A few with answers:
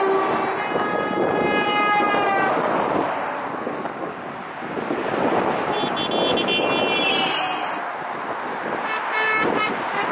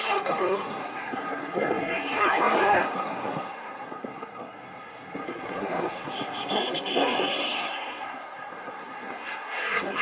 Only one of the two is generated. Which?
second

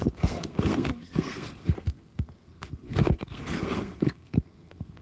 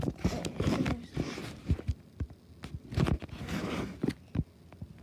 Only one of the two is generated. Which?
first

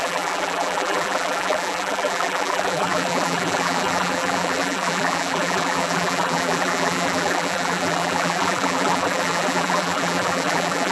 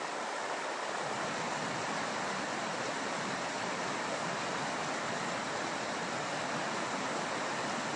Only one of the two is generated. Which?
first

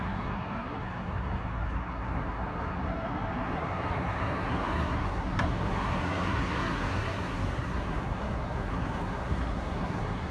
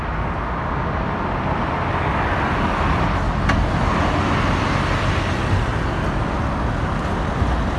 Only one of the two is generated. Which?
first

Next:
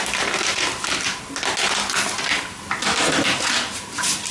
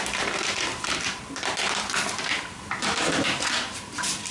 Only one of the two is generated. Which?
second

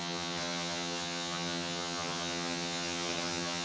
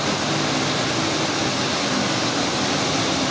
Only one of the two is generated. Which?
first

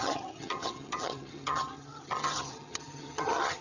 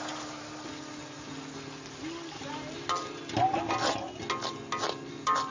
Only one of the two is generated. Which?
first